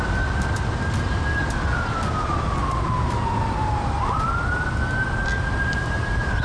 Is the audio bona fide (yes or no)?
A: yes